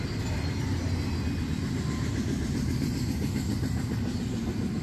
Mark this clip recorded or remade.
recorded